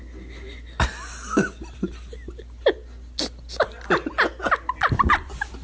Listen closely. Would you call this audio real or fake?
real